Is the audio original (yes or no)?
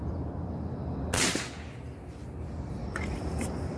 yes